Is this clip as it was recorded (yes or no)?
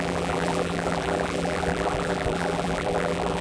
no